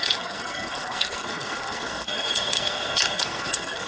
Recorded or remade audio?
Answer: remade